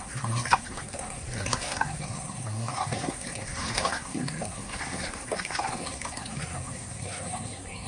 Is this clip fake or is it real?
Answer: fake